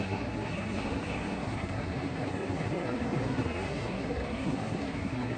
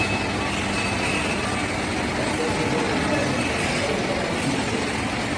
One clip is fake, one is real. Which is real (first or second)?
second